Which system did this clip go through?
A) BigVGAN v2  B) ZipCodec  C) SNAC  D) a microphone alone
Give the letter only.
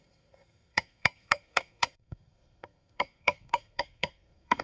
C